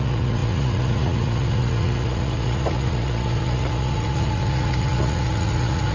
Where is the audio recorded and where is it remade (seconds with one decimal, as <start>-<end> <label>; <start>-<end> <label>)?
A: 0.0-5.9 remade